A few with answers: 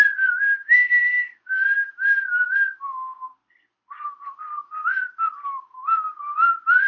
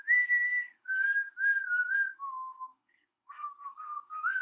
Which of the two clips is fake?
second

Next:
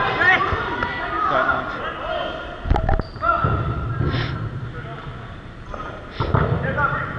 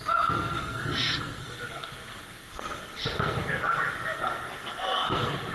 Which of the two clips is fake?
second